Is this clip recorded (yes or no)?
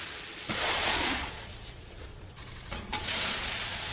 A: no